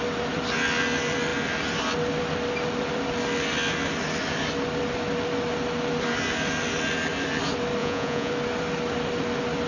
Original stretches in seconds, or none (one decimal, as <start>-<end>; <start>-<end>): 0.0-7.8; 8.3-9.7